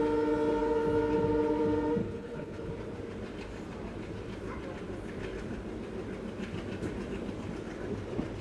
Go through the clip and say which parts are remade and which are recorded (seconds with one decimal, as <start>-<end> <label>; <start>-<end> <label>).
0.0-2.0 recorded; 2.0-2.7 remade; 2.7-8.4 recorded